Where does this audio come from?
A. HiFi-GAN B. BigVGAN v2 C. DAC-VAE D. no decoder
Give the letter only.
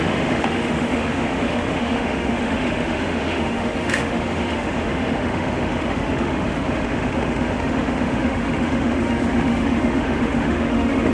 C